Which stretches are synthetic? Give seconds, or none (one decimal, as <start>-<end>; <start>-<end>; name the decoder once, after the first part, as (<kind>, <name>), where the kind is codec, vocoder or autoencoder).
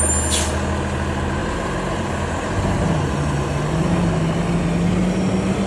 none